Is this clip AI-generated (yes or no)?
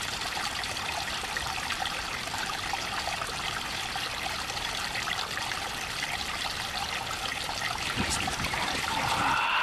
yes